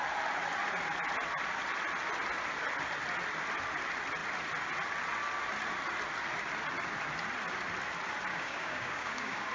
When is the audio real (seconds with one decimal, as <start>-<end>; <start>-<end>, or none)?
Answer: 0.0-8.3